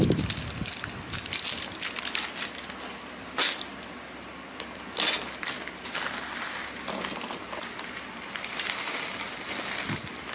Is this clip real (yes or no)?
yes